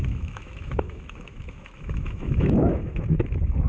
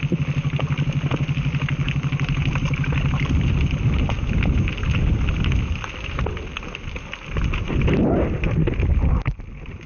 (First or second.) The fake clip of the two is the first